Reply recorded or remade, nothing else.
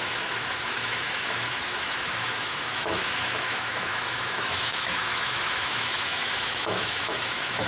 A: remade